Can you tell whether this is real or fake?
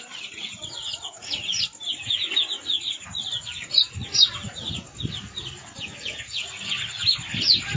real